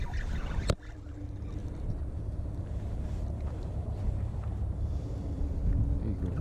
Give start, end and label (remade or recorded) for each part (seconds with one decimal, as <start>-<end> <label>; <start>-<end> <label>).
0.0-1.6 recorded; 1.6-5.4 remade; 5.4-6.4 recorded